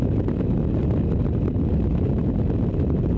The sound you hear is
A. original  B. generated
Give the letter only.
A